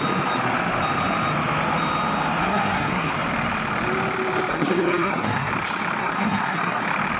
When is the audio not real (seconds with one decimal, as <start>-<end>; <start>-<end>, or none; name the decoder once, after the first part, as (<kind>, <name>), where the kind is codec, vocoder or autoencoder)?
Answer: 2.4-3.1 (codec, SNAC); 4.5-5.5; 6.0-6.8